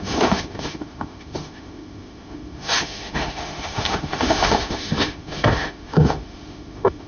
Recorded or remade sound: remade